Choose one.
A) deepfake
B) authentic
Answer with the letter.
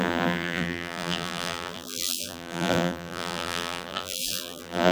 A